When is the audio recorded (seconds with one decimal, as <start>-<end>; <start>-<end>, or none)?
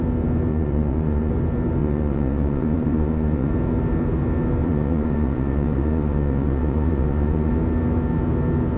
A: 0.0-0.5; 1.3-1.8; 3.5-4.6; 7.5-8.8